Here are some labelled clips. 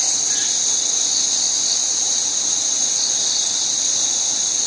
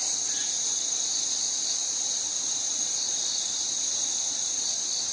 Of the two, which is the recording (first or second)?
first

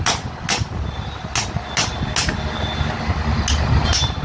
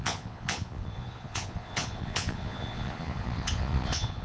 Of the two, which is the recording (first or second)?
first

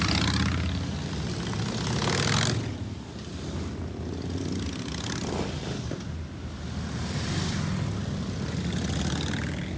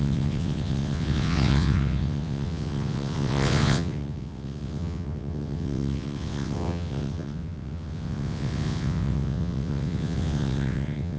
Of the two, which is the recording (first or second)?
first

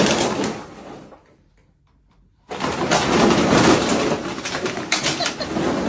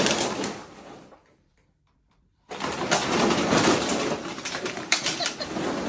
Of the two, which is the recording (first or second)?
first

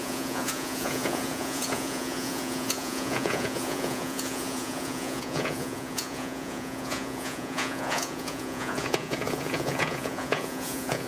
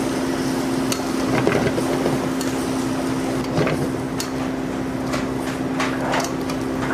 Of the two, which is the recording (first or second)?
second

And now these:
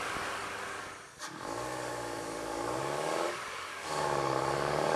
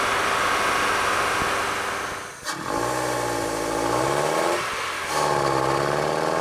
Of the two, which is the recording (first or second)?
second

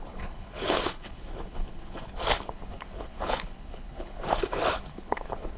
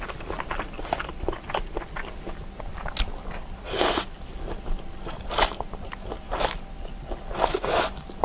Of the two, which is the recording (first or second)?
second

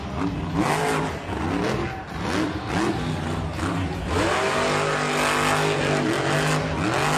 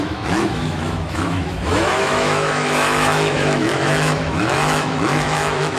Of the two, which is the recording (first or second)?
first